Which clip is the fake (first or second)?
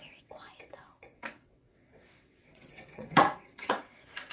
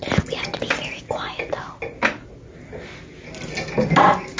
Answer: first